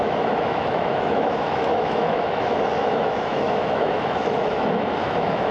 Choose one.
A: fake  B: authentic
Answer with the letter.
A